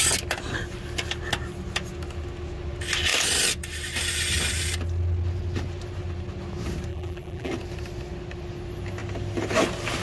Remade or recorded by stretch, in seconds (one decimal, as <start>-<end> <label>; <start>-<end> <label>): 0.0-6.9 recorded; 6.9-7.5 remade; 7.5-10.0 recorded